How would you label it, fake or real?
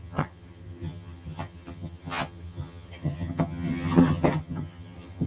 fake